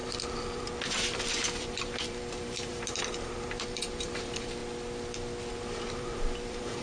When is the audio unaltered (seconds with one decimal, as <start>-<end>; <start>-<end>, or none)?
4.6-5.5